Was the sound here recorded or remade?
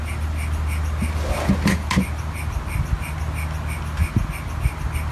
recorded